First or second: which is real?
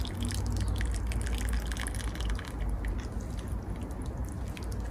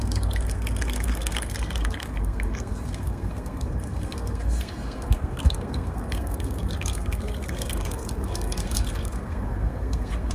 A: first